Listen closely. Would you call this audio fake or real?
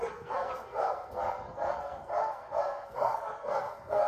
fake